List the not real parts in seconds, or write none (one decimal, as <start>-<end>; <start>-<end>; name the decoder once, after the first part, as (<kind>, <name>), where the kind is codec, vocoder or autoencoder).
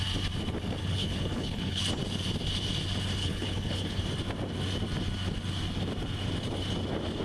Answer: 0.8-1.8 (codec, HILCodec); 3.2-4.0